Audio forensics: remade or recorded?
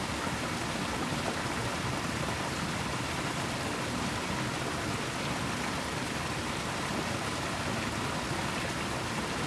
recorded